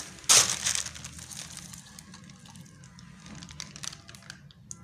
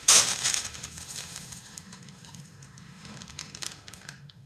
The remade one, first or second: second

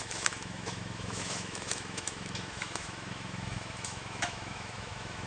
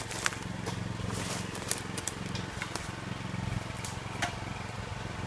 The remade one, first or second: first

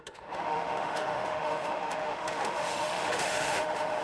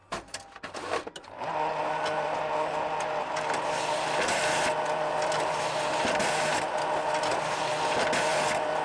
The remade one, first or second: first